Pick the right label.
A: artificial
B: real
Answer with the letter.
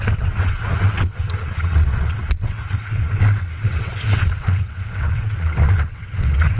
A